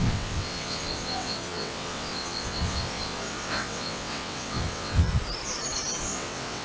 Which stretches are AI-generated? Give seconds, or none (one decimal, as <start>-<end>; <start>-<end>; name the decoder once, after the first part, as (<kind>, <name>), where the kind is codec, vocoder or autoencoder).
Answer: 0.0-5.1 (vocoder, WaveNeXt); 6.0-6.6

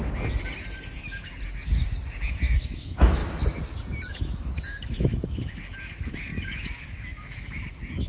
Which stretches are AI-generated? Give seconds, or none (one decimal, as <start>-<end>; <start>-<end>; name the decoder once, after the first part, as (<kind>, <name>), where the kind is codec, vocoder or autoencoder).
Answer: 2.4-3.2 (autoencoder, DAC-VAE); 4.1-8.1

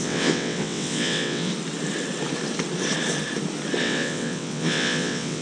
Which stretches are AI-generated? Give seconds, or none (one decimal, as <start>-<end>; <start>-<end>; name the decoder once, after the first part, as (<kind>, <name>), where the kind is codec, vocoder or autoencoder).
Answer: 0.0-1.5 (vocoder, WaveNeXt); 3.8-5.4

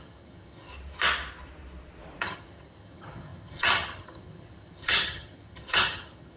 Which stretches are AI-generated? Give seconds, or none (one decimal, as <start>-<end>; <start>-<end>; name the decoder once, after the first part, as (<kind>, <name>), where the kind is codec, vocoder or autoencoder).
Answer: 0.0-0.7 (vocoder, HiFi-GAN); 2.2-6.4

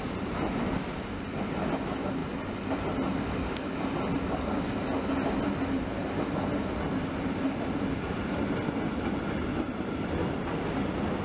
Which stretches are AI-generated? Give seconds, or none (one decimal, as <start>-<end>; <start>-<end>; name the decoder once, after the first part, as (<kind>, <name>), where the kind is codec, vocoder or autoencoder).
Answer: none

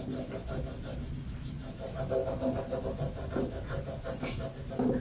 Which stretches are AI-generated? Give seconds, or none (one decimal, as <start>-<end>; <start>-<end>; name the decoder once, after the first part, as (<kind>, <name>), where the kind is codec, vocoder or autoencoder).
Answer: none